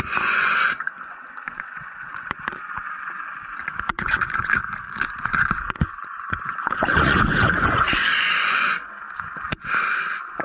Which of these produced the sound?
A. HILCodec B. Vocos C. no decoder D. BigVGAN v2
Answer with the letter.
B